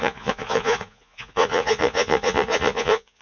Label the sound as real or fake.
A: fake